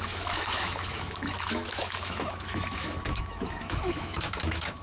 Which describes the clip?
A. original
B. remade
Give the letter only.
B